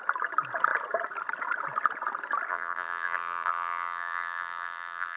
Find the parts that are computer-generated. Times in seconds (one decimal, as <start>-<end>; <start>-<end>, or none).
2.5-5.2